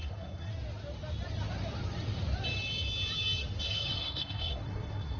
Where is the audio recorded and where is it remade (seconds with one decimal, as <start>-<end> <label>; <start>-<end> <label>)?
0.0-0.5 remade; 0.5-3.6 recorded; 3.6-5.2 remade

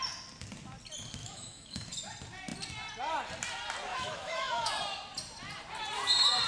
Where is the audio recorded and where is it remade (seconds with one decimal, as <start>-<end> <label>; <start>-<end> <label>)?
0.0-1.2 recorded; 1.2-1.9 remade; 1.9-3.9 recorded; 3.9-4.7 remade; 4.7-6.5 recorded